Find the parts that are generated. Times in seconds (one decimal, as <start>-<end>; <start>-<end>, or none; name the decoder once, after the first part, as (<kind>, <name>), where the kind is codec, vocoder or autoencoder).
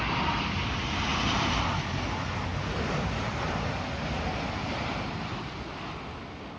1.1-1.8 (vocoder, BigVGAN v2)